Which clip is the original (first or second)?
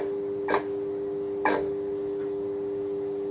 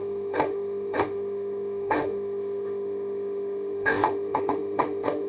first